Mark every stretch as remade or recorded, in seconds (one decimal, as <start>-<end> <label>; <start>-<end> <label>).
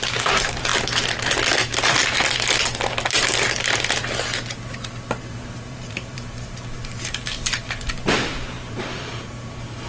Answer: 0.0-0.7 remade; 0.7-5.3 recorded; 5.3-9.9 remade